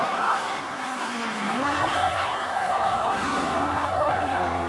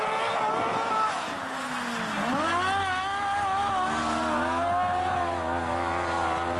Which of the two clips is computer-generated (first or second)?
first